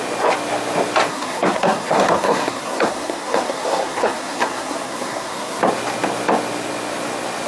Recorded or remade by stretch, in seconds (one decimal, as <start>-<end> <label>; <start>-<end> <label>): 0.0-1.1 recorded; 1.1-5.6 remade; 5.6-7.5 recorded